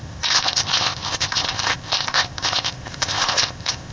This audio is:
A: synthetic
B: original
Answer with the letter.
A